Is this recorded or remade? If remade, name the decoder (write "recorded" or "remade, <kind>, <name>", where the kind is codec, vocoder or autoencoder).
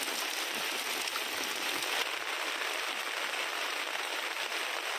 recorded